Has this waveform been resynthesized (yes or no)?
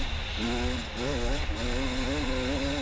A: no